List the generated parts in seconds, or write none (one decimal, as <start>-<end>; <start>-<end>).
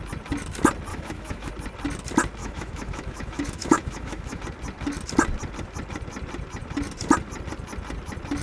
0.9-1.5; 2.4-4.4